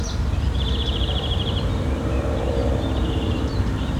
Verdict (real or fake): fake